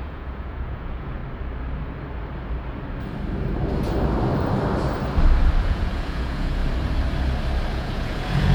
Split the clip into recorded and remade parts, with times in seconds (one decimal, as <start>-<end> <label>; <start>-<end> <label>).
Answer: 0.0-1.2 remade; 1.2-5.6 recorded; 5.6-6.6 remade; 6.6-7.7 recorded; 7.7-8.5 remade